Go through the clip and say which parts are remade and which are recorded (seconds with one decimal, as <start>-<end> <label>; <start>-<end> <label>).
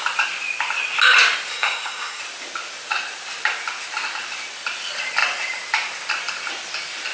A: 0.0-1.5 recorded; 1.5-2.2 remade; 2.2-7.1 recorded